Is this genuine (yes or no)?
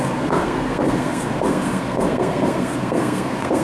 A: no